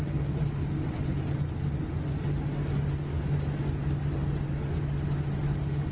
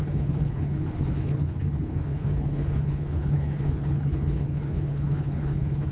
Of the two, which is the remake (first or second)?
second